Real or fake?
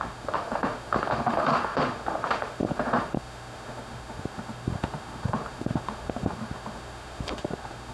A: fake